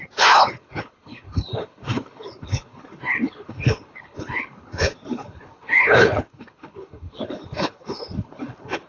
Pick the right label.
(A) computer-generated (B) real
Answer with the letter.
A